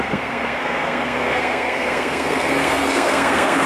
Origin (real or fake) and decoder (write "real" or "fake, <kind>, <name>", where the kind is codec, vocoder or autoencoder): fake, codec, SNAC